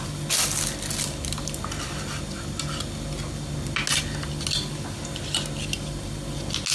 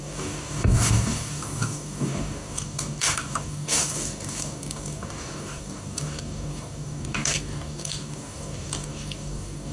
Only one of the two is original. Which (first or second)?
first